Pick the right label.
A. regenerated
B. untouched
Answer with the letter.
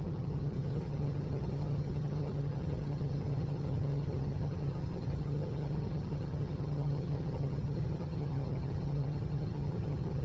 A